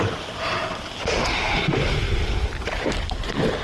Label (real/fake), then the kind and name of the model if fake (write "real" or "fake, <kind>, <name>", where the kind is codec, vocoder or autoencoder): real